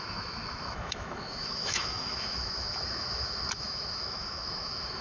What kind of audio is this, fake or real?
fake